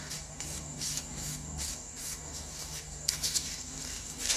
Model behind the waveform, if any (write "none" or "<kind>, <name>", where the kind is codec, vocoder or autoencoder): codec, DAC